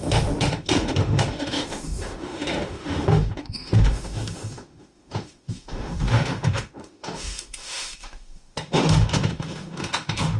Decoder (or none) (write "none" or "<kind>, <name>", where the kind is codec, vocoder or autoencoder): autoencoder, DAC-VAE